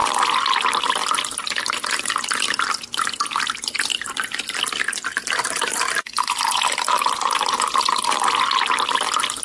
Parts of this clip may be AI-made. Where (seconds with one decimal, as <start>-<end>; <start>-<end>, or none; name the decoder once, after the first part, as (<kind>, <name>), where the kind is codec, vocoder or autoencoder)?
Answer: none